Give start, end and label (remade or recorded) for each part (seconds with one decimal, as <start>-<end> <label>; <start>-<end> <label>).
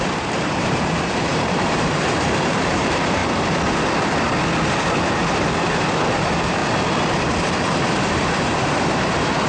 0.0-3.2 remade; 3.2-5.2 recorded; 5.2-6.6 remade; 6.6-7.6 recorded; 7.6-9.5 remade